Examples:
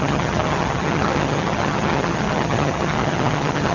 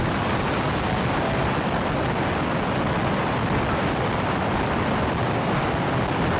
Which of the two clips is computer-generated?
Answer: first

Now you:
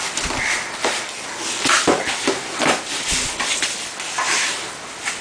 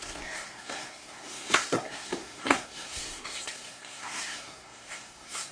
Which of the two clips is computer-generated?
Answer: second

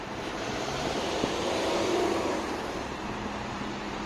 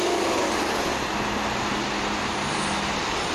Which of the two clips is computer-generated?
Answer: first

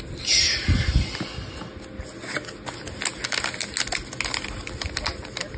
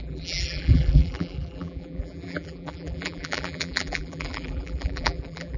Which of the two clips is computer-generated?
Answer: second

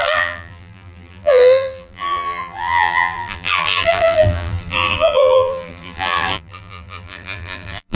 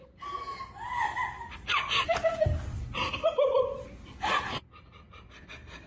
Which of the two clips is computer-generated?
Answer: first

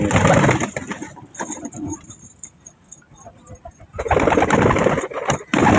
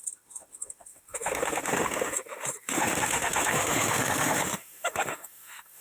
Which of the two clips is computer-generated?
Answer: second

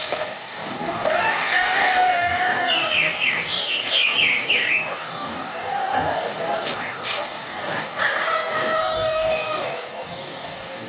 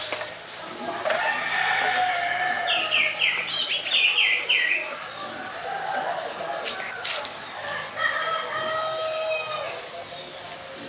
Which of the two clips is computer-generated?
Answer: first